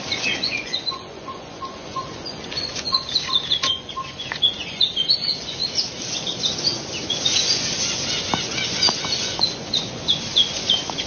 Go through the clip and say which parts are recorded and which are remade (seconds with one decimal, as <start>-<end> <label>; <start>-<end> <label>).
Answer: 0.0-5.6 remade; 5.6-6.1 recorded; 6.1-11.1 remade